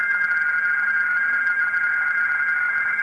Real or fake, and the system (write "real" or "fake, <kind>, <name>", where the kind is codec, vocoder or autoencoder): real